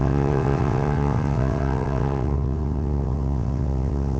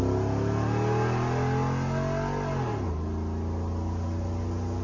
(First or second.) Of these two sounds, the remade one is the first